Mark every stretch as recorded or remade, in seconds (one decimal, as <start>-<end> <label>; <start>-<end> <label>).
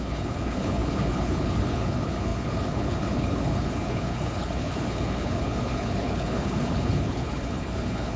0.0-8.2 remade